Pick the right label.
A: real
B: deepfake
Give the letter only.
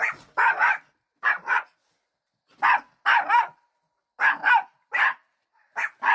A